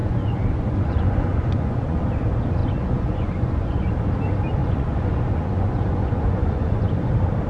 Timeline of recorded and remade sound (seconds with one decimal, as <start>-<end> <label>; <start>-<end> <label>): 0.0-2.0 remade; 2.0-2.6 recorded; 2.6-3.9 remade; 3.9-4.6 recorded; 4.6-7.1 remade; 7.1-7.5 recorded